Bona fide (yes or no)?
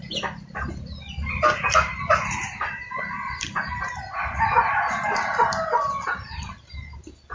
yes